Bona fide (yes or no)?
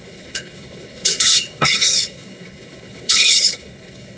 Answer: no